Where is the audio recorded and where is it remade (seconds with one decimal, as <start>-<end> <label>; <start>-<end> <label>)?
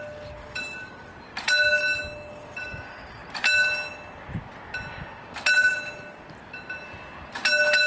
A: 0.0-1.1 remade; 1.1-2.3 recorded; 2.3-3.2 remade; 3.2-7.9 recorded